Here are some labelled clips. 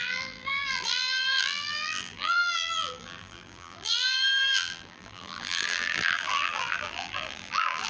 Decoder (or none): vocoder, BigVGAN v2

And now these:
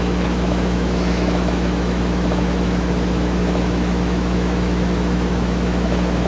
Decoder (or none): autoencoder, DAC-VAE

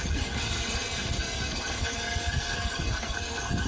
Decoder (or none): codec, SNAC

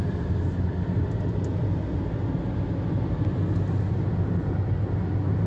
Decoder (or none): none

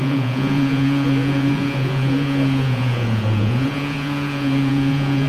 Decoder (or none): vocoder, Vocos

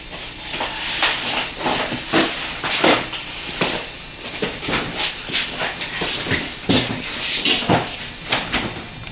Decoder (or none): none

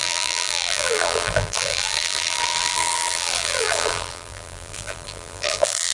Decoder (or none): vocoder, BigVGAN v2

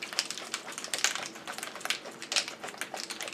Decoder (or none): none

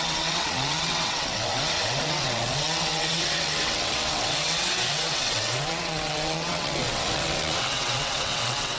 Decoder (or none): vocoder, WaveNeXt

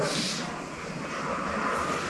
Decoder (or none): none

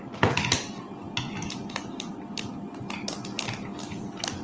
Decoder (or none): none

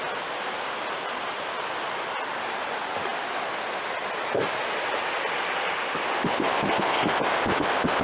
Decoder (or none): none